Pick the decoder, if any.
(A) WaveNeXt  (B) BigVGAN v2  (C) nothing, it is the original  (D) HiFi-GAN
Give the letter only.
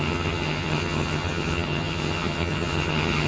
D